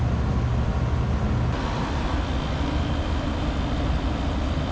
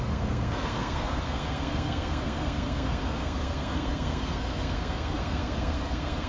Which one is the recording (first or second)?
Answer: first